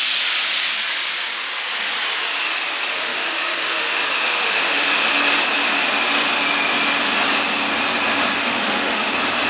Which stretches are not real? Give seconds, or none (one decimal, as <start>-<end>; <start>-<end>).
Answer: 2.9-5.2; 8.4-9.1